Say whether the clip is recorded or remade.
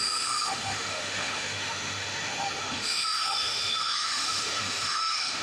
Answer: remade